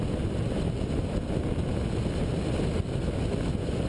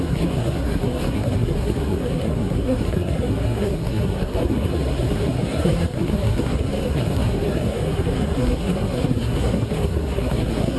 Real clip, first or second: first